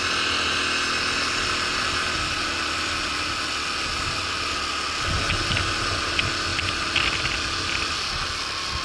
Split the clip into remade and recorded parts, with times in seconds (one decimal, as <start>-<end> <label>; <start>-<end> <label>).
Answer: 0.0-8.8 recorded